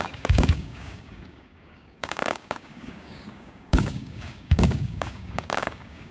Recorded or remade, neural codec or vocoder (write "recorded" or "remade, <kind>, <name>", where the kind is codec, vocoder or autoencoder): remade, codec, DAC